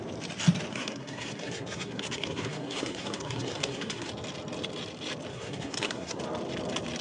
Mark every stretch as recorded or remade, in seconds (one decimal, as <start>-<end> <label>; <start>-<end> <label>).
0.0-0.7 recorded; 0.7-4.1 remade; 4.1-5.3 recorded; 5.3-6.2 remade; 6.2-7.0 recorded